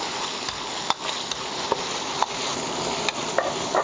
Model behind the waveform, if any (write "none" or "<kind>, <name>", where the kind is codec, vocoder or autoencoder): none